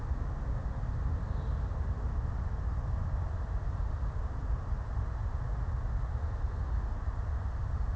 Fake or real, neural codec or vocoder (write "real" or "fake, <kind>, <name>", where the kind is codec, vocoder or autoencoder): real